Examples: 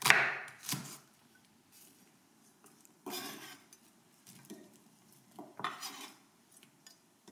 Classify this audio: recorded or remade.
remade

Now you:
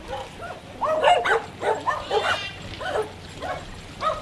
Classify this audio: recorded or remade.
recorded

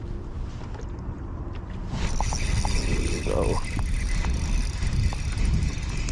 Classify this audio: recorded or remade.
recorded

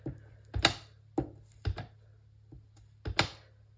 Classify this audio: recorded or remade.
recorded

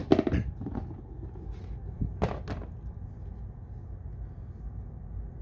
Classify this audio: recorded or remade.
recorded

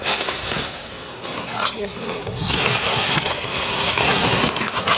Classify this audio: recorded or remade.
remade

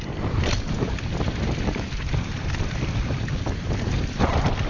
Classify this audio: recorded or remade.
recorded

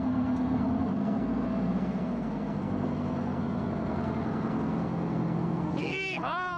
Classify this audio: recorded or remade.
remade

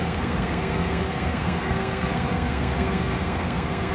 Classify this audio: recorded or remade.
remade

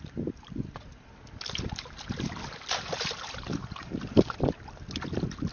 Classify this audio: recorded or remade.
recorded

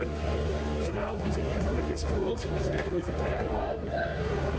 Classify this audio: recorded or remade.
remade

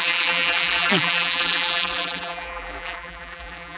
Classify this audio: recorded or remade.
remade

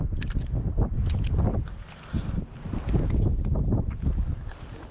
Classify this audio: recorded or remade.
recorded